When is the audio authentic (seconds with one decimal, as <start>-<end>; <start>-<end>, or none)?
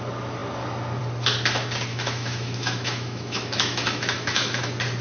0.0-1.9; 4.6-5.0